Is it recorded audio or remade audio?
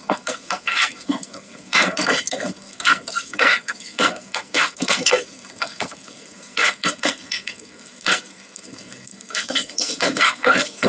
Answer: remade